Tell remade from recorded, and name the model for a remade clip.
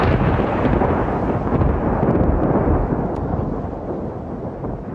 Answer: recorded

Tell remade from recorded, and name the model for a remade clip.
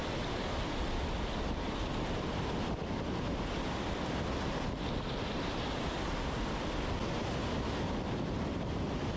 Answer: recorded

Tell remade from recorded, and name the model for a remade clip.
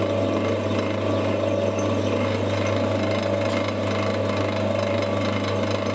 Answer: recorded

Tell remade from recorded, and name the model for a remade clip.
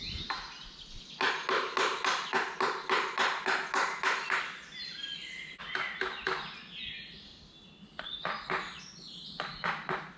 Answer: recorded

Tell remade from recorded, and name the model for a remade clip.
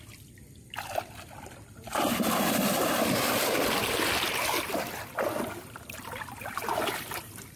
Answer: remade, vocoder, BigVGAN v2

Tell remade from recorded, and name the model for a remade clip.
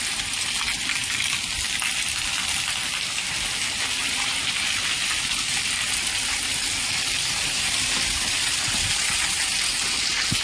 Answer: recorded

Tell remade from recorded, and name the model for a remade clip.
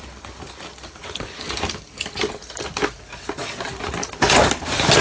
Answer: recorded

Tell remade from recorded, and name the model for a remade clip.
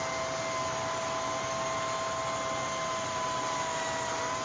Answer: recorded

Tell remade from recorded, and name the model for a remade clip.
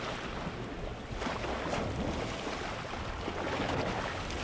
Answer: recorded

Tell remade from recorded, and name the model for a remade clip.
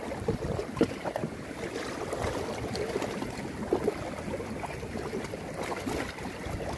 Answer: recorded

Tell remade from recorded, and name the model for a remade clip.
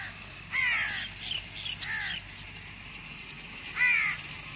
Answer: recorded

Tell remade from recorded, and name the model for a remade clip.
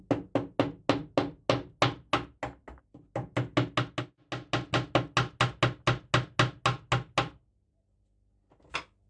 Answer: recorded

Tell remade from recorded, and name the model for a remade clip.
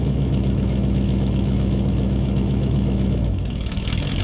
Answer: remade, autoencoder, DAC-VAE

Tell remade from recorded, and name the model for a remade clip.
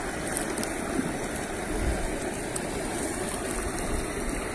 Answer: recorded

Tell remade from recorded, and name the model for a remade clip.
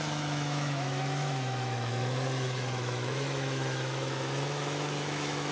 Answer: remade, autoencoder, DAC-VAE